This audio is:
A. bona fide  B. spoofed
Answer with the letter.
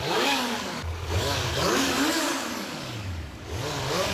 B